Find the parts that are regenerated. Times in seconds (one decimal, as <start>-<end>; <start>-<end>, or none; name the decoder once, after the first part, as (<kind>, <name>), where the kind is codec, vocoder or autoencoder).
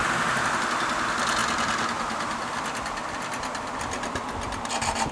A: none